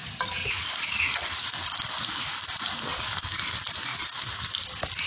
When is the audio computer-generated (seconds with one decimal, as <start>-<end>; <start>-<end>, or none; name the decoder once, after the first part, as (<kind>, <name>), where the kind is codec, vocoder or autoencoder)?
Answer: none